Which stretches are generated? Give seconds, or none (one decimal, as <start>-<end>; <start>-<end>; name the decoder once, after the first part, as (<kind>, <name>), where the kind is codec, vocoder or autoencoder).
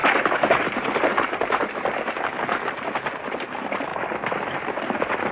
none